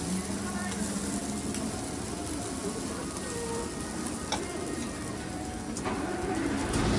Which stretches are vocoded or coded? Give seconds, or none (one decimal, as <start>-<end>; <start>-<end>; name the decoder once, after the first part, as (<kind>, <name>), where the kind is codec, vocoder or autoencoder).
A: none